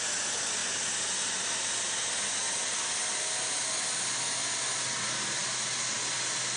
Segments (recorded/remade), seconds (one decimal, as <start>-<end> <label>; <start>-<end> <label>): 0.0-6.6 recorded